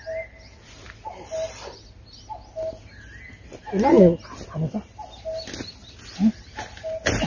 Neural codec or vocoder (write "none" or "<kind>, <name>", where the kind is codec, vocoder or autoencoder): none